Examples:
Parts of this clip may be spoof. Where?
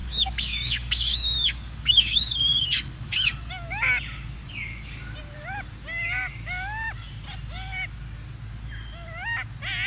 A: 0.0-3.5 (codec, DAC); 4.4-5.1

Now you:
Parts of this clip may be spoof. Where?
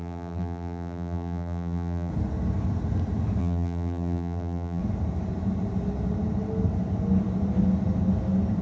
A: 0.0-2.1 (vocoder, BigVGAN v2); 3.4-4.8